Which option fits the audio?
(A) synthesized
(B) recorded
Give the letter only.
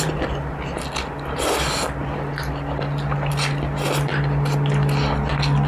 B